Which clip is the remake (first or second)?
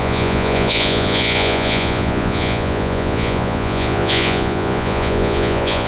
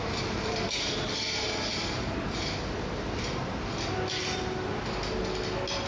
first